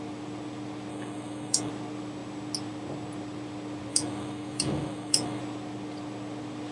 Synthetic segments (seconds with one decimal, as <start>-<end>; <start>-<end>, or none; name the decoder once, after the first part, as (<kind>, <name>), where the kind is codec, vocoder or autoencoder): 0.9-1.7 (autoencoder, DAC-VAE); 3.9-5.4